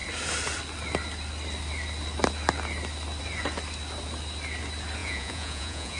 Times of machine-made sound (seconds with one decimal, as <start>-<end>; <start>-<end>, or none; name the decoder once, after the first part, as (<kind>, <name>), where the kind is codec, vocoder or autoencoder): 5.0-6.0 (vocoder, Vocos)

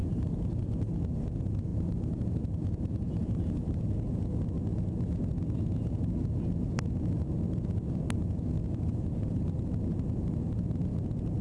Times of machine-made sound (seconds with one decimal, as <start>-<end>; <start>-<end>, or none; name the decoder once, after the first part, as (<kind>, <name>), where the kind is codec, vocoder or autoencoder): 0.0-0.7 (vocoder, BigVGAN v2); 1.7-3.8; 8.9-9.7

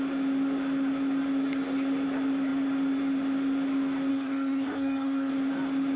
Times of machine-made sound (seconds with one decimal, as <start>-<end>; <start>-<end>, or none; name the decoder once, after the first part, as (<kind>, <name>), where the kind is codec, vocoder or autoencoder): 4.1-5.3 (codec, SNAC)

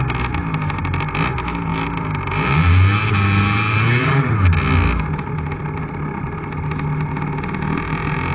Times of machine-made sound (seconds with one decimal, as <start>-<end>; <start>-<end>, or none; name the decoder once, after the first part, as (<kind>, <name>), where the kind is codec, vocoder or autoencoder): 1.7-4.3 (vocoder, BigVGAN v2)